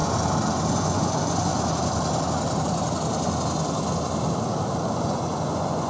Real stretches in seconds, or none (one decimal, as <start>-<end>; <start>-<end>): 0.0-0.7; 1.5-4.9

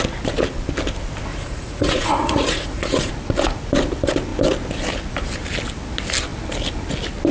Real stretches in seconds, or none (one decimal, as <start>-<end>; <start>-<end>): 0.0-1.3; 3.1-7.3

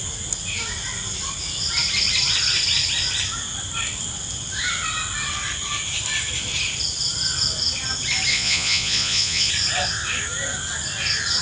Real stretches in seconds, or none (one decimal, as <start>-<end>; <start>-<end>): 0.0-8.3; 9.5-11.4

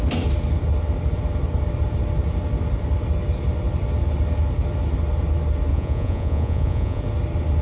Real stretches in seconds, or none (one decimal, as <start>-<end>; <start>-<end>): 0.0-5.7; 7.0-7.6

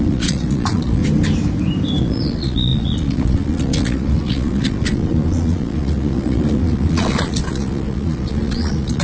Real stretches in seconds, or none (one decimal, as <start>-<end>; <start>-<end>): 1.0-2.0

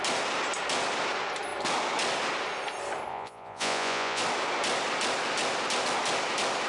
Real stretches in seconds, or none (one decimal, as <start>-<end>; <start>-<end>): 0.0-3.1; 4.2-6.7